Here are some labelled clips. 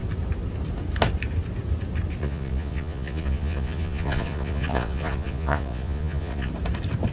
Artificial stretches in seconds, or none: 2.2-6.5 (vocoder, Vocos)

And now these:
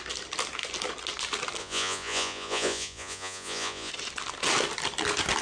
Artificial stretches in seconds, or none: 1.6-3.9 (vocoder, Vocos)